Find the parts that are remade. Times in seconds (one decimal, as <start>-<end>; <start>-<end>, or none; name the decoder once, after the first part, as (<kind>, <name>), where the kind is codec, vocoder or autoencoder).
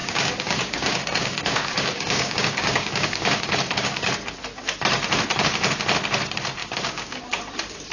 0.0-4.1 (codec, DAC); 6.6-7.2